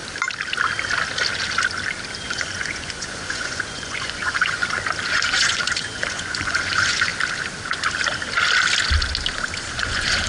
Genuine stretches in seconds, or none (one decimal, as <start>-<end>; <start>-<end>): 0.0-2.2; 4.6-5.1; 7.1-9.6